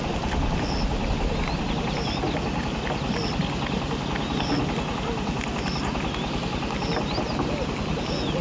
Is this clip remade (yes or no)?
no